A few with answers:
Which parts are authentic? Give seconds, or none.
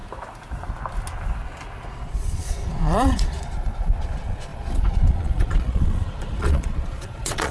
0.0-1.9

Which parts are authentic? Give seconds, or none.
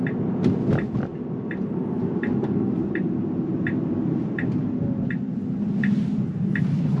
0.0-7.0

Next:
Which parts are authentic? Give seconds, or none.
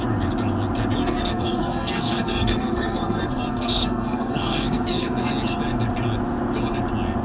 0.0-1.0; 5.3-7.2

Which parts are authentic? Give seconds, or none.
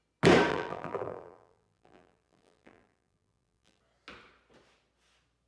0.0-0.5; 3.8-5.5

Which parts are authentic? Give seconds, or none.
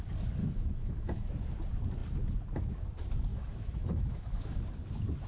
0.0-0.4; 1.3-3.3; 4.6-5.3